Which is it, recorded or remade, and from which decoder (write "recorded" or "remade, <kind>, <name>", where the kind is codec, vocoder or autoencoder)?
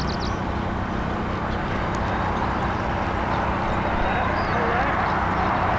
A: recorded